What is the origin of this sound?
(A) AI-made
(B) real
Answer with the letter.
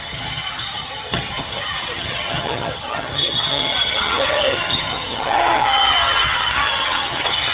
A